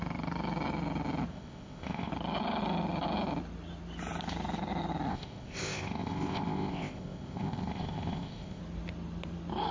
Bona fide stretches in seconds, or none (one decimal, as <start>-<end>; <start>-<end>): 0.0-1.3; 2.1-5.1; 8.6-9.7